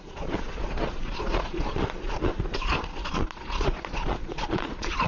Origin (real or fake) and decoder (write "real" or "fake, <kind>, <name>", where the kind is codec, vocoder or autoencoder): fake, vocoder, Vocos